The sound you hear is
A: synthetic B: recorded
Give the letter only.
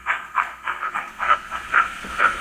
A